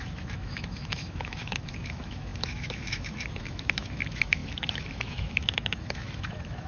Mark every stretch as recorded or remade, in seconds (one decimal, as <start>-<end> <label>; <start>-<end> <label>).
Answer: 0.0-6.7 remade